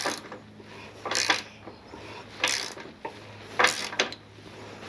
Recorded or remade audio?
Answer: recorded